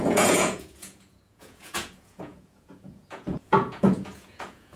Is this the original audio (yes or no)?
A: no